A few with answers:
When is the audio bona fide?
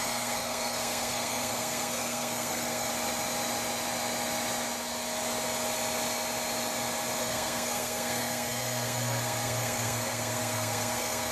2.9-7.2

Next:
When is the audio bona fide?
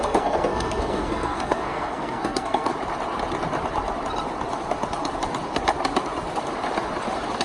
2.7-7.4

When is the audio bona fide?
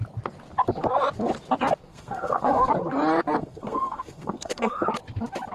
0.0-1.9; 2.7-3.4; 4.9-5.5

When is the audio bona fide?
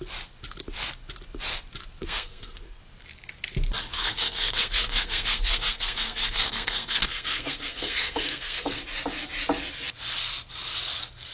0.0-2.0; 2.8-3.9; 8.8-11.3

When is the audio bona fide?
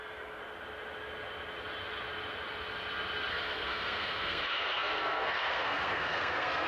0.4-3.3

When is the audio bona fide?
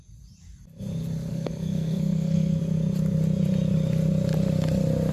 0.0-1.3; 2.6-5.1